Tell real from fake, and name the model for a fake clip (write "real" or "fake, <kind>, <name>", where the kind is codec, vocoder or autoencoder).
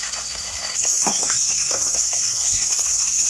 fake, codec, SNAC